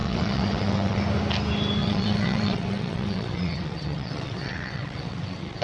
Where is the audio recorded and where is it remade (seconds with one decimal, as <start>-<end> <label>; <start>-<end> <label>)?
0.0-1.0 remade; 1.0-1.8 recorded; 1.8-5.6 remade